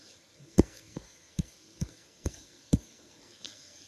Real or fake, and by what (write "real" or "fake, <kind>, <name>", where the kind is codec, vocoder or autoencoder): fake, codec, SNAC